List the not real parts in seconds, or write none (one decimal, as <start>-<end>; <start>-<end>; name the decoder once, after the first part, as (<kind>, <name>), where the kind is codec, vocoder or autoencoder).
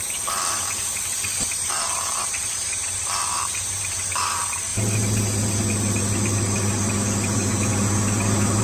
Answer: 0.0-4.7 (vocoder, BigVGAN v2)